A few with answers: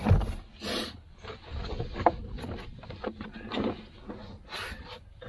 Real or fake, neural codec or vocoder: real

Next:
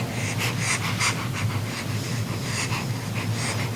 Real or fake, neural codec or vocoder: real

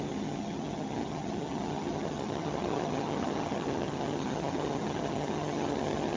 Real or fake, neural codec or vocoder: fake, vocoder, HiFi-GAN